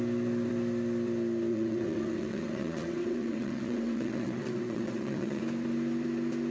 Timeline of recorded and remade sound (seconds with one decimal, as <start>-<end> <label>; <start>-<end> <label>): 0.0-1.5 recorded; 1.5-5.4 remade; 5.4-6.5 recorded